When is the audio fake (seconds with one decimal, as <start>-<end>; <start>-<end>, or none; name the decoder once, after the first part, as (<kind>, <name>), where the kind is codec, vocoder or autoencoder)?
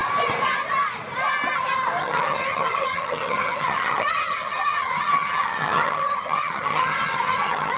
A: 2.0-7.8 (vocoder, HiFi-GAN)